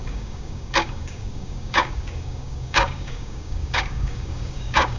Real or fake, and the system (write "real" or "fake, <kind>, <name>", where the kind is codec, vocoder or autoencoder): fake, codec, DAC